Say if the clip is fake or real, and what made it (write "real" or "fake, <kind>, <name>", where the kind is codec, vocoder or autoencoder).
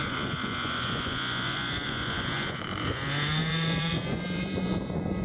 fake, vocoder, Vocos